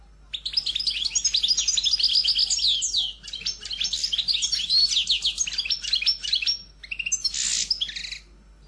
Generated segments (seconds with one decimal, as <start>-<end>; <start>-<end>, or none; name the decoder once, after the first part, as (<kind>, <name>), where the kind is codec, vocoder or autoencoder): none